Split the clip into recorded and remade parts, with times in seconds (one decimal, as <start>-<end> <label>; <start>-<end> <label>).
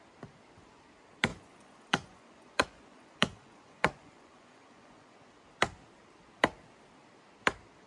0.0-1.3 recorded; 1.3-5.3 remade; 5.3-7.9 recorded